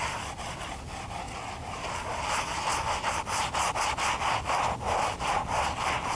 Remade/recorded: recorded